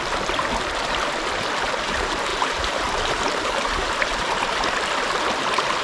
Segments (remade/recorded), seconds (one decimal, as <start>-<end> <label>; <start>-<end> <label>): 0.0-2.3 recorded; 2.3-3.9 remade; 3.9-5.8 recorded